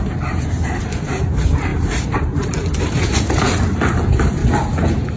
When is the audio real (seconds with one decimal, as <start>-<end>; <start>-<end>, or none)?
4.4-5.2